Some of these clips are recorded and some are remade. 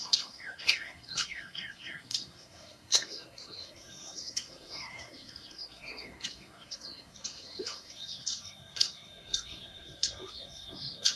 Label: remade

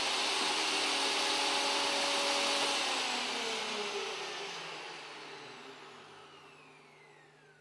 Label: recorded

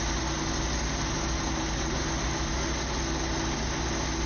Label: recorded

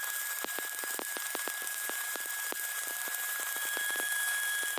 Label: remade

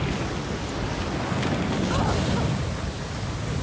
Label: recorded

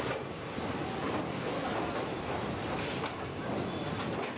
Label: recorded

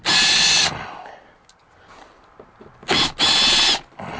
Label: recorded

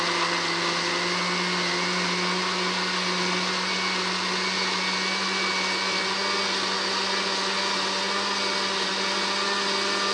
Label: recorded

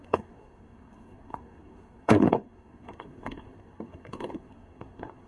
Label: remade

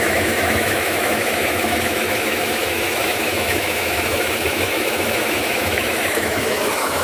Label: remade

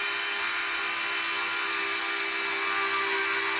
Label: recorded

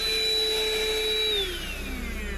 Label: recorded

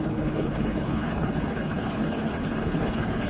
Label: remade